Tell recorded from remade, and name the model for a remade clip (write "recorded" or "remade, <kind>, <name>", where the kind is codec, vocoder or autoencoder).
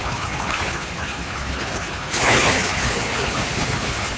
remade, codec, HILCodec